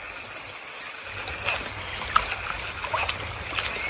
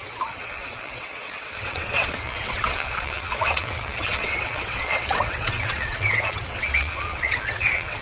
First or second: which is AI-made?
second